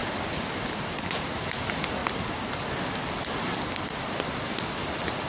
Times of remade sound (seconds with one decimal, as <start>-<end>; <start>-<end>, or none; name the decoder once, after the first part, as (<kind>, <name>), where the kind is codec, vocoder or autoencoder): none